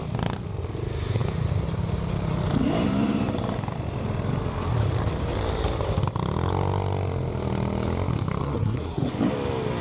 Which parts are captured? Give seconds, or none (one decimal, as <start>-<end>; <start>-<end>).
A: 0.0-8.4; 9.1-9.8